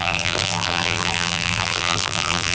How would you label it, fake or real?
fake